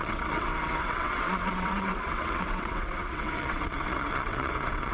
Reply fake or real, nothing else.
fake